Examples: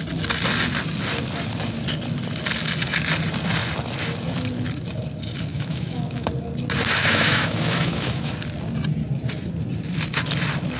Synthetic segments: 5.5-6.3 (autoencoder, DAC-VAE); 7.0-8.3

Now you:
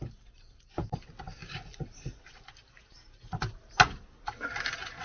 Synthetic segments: 0.0-0.5 (vocoder, BigVGAN v2)

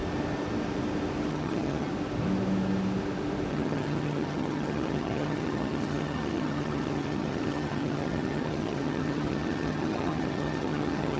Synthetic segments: 1.3-1.9 (vocoder, HiFi-GAN); 3.5-11.2

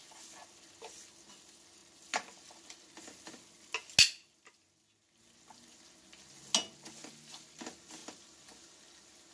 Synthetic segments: none